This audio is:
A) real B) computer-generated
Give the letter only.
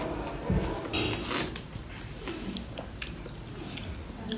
A